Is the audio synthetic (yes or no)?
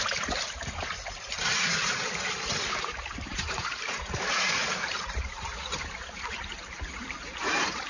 yes